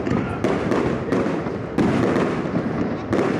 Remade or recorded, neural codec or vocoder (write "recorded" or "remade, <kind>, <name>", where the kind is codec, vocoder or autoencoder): recorded